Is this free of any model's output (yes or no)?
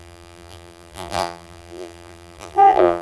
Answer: no